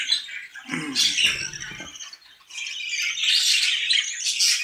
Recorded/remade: recorded